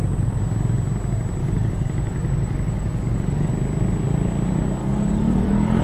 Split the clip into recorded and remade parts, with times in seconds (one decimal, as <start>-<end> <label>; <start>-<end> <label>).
0.0-1.4 recorded; 1.4-3.5 remade; 3.5-4.8 recorded; 4.8-5.8 remade